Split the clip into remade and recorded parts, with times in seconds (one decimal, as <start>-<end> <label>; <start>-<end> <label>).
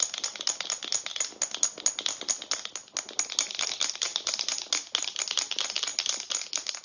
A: 0.0-6.8 recorded